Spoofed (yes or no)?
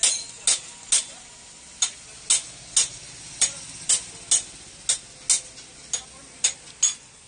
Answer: no